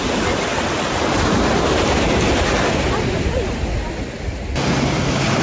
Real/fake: real